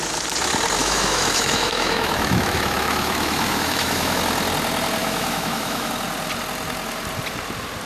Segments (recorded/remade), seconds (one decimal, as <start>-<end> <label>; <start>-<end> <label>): 0.0-0.8 recorded; 0.8-4.2 remade; 4.2-5.0 recorded; 5.0-5.9 remade; 5.9-7.9 recorded